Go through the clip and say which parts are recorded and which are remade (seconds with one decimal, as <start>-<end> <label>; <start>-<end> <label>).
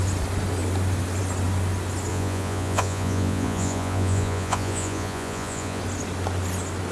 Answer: 0.0-2.1 recorded; 2.1-5.8 remade; 5.8-6.9 recorded